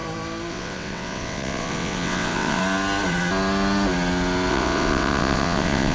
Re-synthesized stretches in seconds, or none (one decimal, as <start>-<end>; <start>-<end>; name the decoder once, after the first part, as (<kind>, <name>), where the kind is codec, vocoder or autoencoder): 0.5-2.6 (vocoder, WaveNeXt); 4.5-5.9